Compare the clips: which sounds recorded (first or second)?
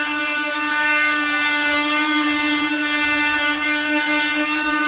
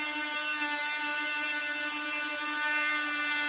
second